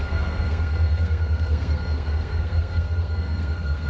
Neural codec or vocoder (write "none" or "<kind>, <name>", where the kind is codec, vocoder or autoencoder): codec, SNAC